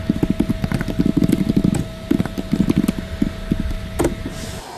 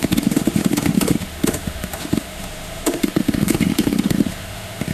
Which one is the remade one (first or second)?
second